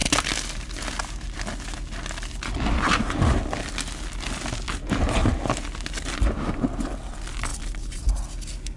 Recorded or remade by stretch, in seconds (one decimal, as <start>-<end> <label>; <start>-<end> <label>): 0.0-8.8 recorded